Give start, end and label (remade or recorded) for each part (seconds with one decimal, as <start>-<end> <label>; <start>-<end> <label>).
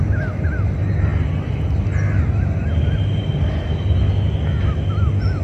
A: 0.0-5.4 recorded